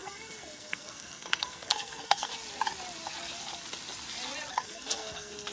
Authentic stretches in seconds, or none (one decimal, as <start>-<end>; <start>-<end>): 2.3-4.5